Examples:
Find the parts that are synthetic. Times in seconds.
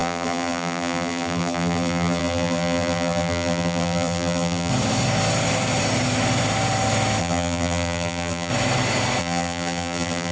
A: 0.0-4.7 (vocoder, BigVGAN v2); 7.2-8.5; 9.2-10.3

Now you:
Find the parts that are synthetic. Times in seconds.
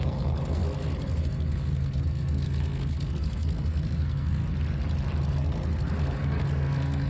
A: 0.0-4.4 (codec, SNAC); 5.3-7.1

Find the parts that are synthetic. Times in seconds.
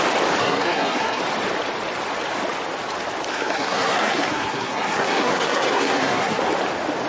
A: 0.4-1.2 (codec, SNAC); 3.3-6.4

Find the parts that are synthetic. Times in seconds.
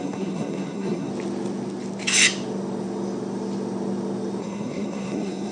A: 0.0-1.1 (codec, SNAC); 4.4-5.5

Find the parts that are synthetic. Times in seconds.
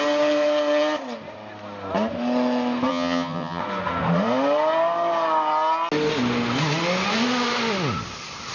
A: 2.9-3.6 (vocoder, HiFi-GAN)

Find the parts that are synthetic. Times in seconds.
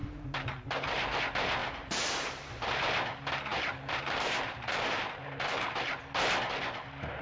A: 0.0-1.2 (vocoder, BigVGAN v2); 1.6-2.6; 3.5-6.0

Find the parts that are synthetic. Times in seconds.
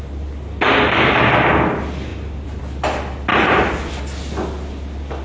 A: 2.1-2.6 (vocoder, BigVGAN v2); 3.3-4.0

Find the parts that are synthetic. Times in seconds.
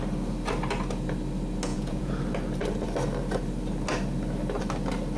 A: 1.7-2.2 (vocoder, Vocos)